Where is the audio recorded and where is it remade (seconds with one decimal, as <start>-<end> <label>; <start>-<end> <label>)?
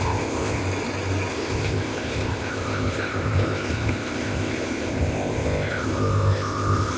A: 0.0-0.6 remade; 0.6-1.3 recorded; 1.3-7.0 remade